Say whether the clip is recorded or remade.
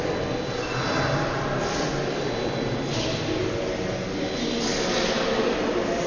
recorded